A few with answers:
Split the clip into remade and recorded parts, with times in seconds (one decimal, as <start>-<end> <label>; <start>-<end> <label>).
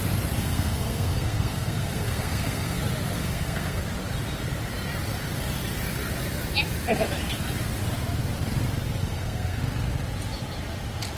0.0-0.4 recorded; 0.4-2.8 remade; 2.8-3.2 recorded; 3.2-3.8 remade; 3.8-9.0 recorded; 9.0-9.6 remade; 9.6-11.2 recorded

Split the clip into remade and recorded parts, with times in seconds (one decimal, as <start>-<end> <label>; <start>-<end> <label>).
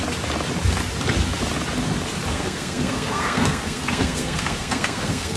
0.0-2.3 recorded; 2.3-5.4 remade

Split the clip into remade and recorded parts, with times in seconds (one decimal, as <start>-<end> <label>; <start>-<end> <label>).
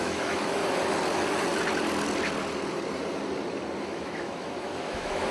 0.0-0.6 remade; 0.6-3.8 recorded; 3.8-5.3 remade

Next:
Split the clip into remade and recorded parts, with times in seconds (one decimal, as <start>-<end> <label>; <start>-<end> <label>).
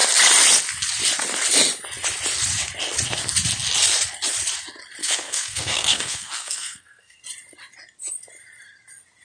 0.0-5.0 recorded; 5.0-7.2 remade; 7.2-9.2 recorded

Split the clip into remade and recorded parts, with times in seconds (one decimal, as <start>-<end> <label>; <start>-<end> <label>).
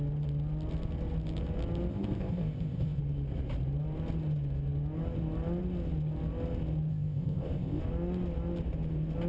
0.0-1.9 recorded; 1.9-3.0 remade; 3.0-6.9 recorded; 6.9-7.8 remade; 7.8-9.3 recorded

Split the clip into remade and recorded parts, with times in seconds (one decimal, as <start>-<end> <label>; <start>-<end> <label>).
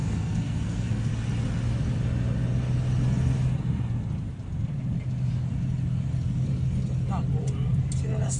0.0-1.1 remade; 1.1-8.4 recorded